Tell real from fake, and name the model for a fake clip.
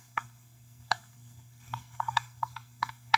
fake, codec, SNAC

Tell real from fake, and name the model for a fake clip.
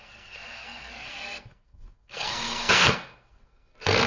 fake, codec, SNAC